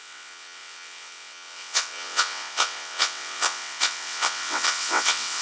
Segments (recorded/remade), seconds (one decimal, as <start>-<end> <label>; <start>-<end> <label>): 0.0-5.4 remade